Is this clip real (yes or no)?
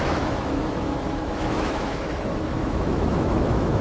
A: no